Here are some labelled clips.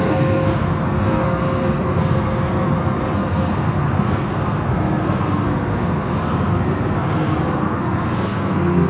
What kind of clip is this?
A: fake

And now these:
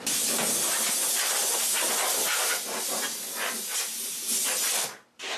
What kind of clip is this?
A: real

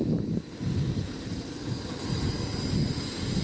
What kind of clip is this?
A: real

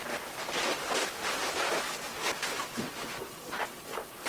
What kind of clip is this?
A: real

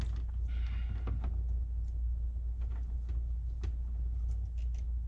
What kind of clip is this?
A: real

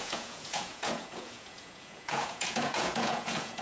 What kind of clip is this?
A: fake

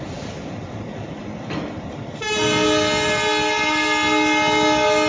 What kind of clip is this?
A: real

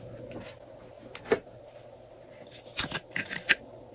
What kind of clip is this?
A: real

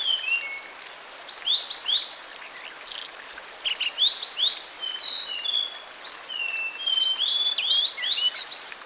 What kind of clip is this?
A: real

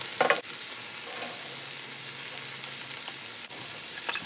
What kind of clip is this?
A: real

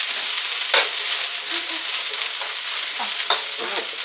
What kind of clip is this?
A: real